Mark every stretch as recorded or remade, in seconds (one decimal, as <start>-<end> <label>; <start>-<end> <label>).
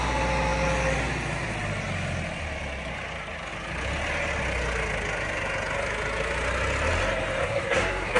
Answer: 0.0-7.4 recorded; 7.4-8.2 remade